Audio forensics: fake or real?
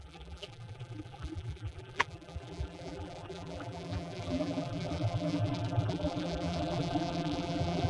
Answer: fake